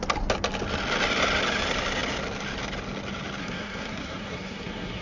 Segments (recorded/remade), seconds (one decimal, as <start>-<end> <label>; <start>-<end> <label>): 0.0-3.4 recorded; 3.4-5.0 remade